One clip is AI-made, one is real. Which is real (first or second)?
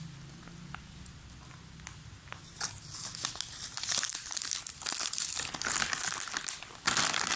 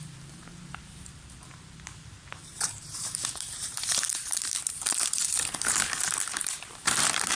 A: first